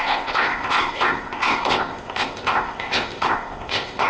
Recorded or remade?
remade